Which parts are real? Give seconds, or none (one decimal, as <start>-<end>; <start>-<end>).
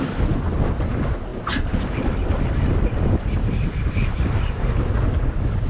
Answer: 0.0-5.7